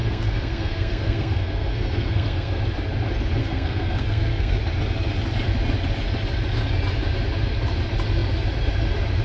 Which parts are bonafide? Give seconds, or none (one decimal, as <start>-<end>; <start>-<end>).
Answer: 2.6-3.4; 4.6-9.2